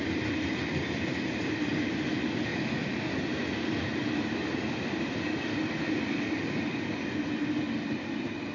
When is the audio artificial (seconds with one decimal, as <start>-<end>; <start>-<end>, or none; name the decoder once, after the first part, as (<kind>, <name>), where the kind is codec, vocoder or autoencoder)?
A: none